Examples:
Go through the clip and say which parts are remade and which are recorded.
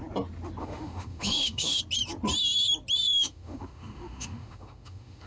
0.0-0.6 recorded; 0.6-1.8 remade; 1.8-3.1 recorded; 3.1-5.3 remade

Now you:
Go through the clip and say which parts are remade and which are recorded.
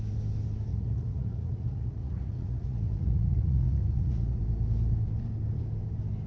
0.0-0.7 recorded; 0.7-4.4 remade; 4.4-6.3 recorded